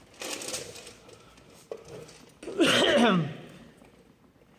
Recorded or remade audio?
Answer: recorded